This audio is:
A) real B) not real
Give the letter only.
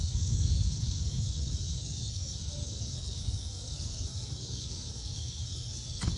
B